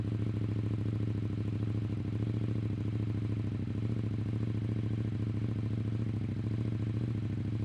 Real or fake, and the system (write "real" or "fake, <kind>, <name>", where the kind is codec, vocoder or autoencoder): real